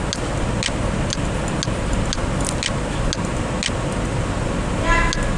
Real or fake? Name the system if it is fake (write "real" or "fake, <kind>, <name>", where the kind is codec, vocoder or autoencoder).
real